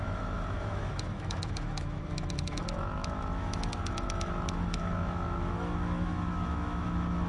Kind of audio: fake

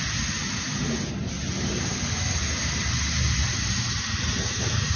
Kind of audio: real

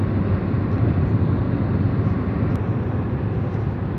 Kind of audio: real